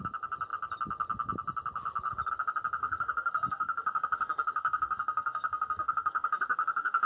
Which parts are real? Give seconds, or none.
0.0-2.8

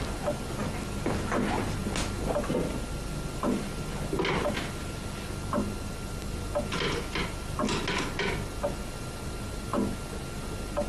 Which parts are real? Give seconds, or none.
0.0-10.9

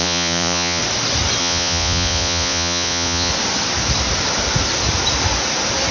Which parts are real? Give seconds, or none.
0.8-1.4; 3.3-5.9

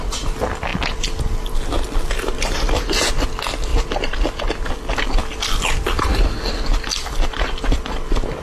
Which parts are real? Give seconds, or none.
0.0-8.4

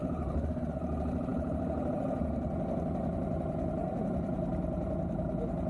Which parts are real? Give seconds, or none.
0.0-3.8; 5.3-5.7